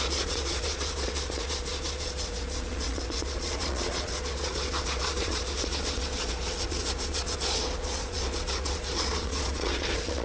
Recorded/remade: remade